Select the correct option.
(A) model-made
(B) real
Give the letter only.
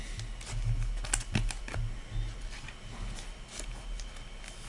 B